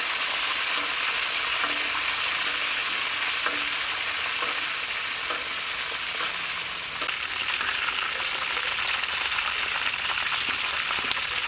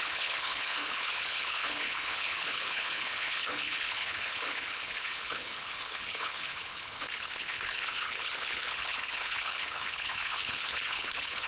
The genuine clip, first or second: first